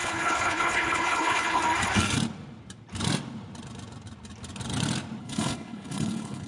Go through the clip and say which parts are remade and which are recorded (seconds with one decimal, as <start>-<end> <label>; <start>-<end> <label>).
0.0-1.6 remade; 1.6-5.2 recorded; 5.2-6.5 remade